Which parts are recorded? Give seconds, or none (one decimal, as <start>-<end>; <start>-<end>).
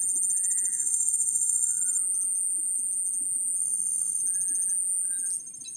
0.0-0.7; 1.8-3.6; 4.2-5.8